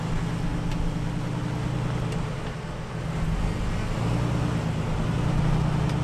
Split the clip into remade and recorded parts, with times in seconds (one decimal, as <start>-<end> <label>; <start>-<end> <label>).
0.0-6.0 recorded